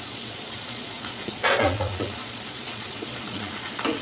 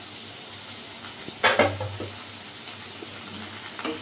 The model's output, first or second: first